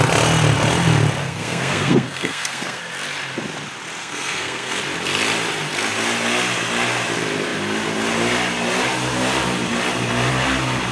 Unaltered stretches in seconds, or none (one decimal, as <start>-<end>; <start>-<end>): 0.0-1.2; 2.8-4.0; 4.8-10.9